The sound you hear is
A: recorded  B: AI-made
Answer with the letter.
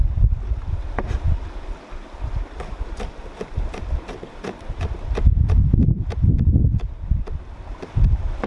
A